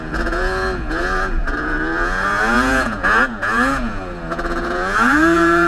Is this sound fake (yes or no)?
yes